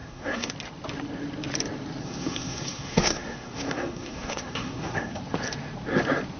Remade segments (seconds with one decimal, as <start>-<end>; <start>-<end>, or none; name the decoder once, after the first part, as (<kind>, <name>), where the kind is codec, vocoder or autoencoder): 0.0-0.5 (codec, SNAC); 2.0-5.2